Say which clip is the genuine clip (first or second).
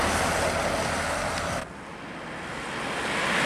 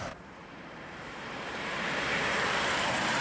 first